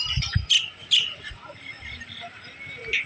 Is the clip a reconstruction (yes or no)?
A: no